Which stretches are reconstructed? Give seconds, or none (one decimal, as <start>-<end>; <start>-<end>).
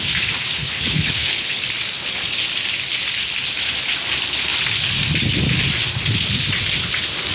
0.6-1.6